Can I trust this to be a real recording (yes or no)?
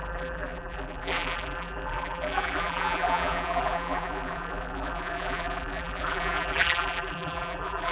no